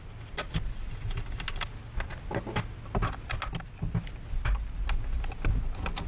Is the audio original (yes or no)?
yes